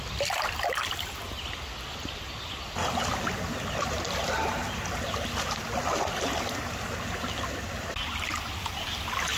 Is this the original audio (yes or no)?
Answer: yes